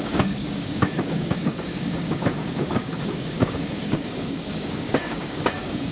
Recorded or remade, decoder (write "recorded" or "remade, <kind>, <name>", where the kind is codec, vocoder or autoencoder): remade, codec, DAC